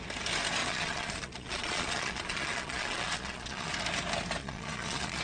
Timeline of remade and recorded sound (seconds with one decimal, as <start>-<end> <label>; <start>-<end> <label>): 0.0-0.6 recorded; 0.6-3.7 remade; 3.7-4.4 recorded; 4.4-5.2 remade